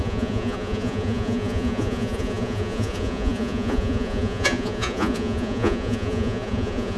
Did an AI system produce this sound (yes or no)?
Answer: yes